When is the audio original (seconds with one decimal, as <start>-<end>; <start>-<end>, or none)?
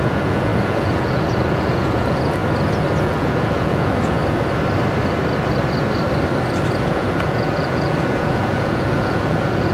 2.4-3.0; 4.2-6.8